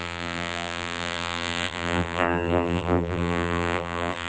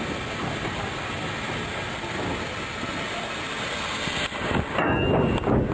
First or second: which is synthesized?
first